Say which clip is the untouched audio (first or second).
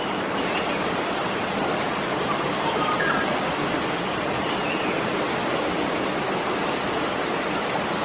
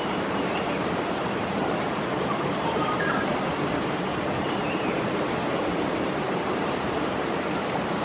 first